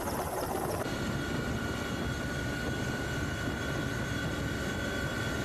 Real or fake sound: fake